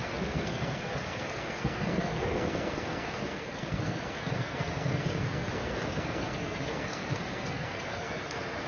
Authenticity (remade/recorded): remade